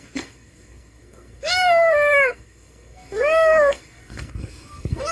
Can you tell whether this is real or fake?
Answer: fake